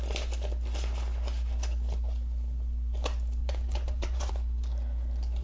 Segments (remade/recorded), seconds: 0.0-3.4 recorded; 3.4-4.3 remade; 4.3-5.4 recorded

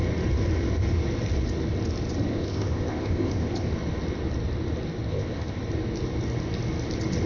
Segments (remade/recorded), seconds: 0.0-2.3 recorded; 2.3-3.7 remade; 3.7-5.1 recorded; 5.1-5.6 remade; 5.6-7.3 recorded

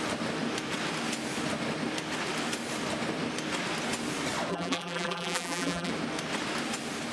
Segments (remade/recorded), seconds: 0.0-4.5 recorded; 4.5-5.9 remade; 5.9-7.1 recorded

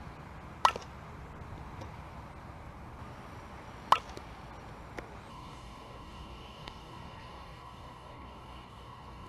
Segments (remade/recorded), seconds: 0.0-5.3 recorded; 5.3-9.3 remade